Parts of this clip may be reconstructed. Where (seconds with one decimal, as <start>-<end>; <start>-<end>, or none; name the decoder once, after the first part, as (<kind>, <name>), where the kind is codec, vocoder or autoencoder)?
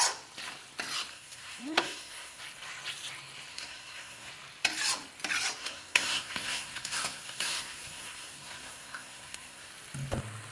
1.1-2.4 (codec, SNAC); 3.5-4.3; 5.6-9.7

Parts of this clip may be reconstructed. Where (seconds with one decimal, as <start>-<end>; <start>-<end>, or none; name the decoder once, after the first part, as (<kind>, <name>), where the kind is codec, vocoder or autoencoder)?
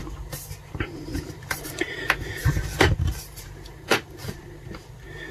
0.6-1.9 (vocoder, BigVGAN v2); 2.4-4.4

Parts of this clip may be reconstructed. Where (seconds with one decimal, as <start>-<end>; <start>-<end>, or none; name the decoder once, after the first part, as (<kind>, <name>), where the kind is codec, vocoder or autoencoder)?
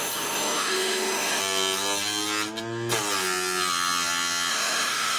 0.0-1.4 (autoencoder, DAC-VAE); 4.5-5.2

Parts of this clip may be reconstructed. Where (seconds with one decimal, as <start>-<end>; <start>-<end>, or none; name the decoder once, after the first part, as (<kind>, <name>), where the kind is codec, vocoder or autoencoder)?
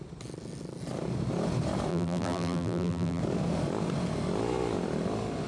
1.9-3.2 (vocoder, BigVGAN v2)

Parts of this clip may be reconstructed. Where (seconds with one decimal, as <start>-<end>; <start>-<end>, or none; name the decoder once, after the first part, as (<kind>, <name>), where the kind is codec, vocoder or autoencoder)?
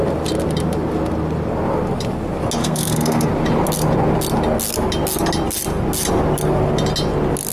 2.6-3.3 (codec, SNAC)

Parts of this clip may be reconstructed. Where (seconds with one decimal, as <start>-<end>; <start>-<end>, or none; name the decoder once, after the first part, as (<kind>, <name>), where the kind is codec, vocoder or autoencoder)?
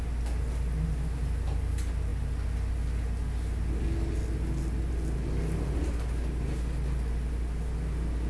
none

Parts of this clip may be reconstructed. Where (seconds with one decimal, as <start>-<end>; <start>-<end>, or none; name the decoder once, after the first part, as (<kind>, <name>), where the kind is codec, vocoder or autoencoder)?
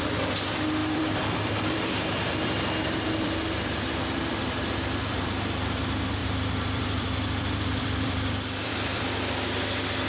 0.8-5.8 (vocoder, BigVGAN v2); 6.2-9.0